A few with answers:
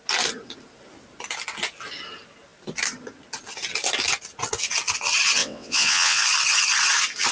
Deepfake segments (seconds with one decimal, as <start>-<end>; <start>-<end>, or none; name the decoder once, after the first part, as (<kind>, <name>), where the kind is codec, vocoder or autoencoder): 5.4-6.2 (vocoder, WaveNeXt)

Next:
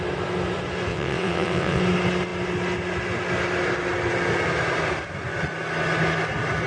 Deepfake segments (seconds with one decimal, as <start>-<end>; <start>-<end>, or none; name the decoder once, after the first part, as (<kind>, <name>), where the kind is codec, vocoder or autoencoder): 0.9-1.8 (vocoder, WaveNeXt)

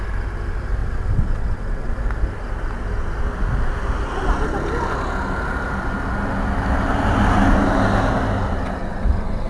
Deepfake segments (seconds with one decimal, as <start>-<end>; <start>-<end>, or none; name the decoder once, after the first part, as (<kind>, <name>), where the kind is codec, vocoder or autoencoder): 0.8-2.0 (vocoder, WaveNeXt); 8.8-9.5

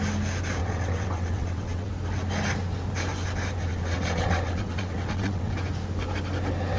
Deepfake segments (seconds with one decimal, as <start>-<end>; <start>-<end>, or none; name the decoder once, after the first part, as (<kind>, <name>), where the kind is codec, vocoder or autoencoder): 0.6-1.9 (vocoder, WaveNeXt); 3.7-5.5

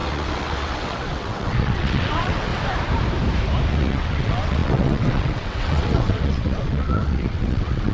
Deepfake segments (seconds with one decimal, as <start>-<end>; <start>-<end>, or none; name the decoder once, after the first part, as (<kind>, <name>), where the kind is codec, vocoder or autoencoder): 0.0-2.5 (vocoder, WaveNeXt); 3.7-7.9